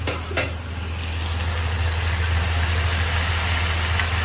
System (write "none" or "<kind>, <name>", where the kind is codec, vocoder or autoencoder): none